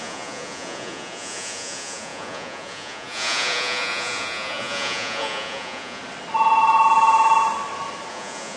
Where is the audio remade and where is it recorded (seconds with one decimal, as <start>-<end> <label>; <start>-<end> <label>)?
0.0-6.0 remade; 6.0-8.1 recorded; 8.1-8.6 remade